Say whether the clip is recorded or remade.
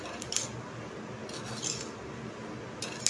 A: recorded